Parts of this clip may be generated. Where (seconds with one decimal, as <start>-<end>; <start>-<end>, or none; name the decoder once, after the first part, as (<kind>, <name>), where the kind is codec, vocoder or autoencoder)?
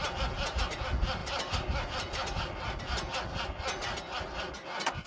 1.2-2.8 (vocoder, BigVGAN v2)